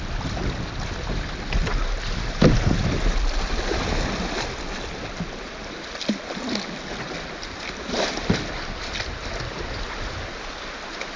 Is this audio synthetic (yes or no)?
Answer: no